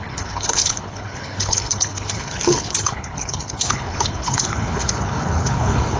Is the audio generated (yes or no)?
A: yes